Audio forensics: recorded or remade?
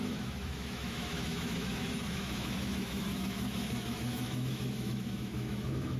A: remade